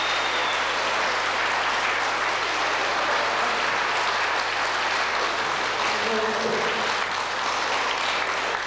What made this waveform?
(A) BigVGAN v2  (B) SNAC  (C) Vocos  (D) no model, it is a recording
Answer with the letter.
D